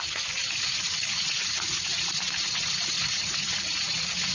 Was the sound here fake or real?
fake